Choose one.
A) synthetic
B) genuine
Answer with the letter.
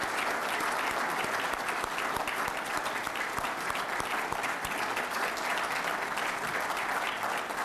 B